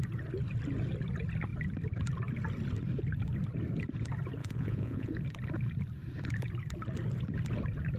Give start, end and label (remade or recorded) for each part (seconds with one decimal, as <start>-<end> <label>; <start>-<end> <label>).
0.0-4.4 recorded; 4.4-5.1 remade; 5.1-8.0 recorded